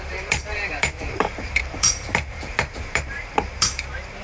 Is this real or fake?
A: fake